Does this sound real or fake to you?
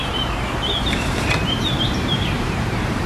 fake